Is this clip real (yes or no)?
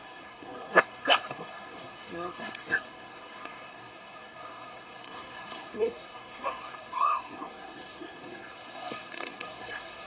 no